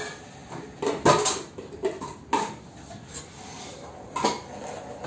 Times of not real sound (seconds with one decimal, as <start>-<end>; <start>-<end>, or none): none